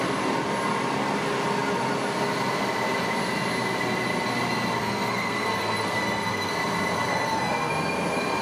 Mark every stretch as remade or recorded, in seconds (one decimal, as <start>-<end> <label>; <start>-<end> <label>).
0.0-4.8 recorded; 4.8-6.5 remade; 6.5-7.1 recorded; 7.1-7.7 remade; 7.7-8.4 recorded